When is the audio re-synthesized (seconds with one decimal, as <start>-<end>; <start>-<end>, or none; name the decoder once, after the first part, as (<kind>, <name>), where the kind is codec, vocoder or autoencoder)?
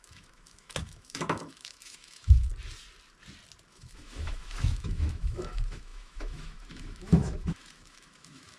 0.0-2.5 (autoencoder, DAC-VAE); 3.7-8.6